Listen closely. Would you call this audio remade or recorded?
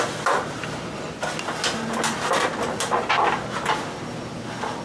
recorded